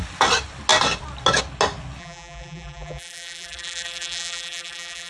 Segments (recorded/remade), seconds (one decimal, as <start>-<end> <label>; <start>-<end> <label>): 0.0-2.0 recorded; 2.0-5.1 remade